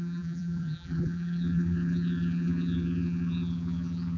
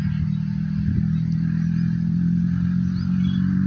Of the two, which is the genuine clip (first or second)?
second